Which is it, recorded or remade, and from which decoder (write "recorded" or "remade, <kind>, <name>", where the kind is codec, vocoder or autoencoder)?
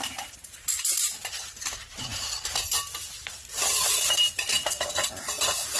recorded